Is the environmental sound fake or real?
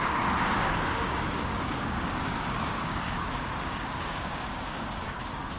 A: fake